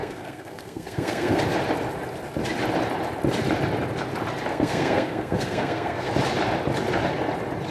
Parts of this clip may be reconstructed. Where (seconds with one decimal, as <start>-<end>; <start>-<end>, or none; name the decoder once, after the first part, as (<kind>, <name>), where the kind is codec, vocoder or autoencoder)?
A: 0.0-1.4 (codec, SNAC); 4.5-6.1